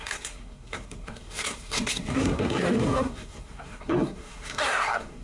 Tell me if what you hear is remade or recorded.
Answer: remade